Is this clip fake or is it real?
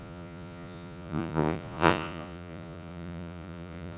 fake